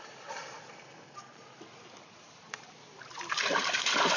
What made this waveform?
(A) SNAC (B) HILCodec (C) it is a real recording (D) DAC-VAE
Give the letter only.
C